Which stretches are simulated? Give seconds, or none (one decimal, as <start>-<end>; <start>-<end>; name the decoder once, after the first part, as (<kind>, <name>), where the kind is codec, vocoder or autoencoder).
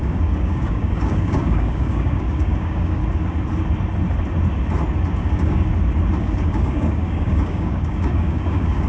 0.0-3.0 (codec, DAC); 5.2-5.7; 6.2-8.9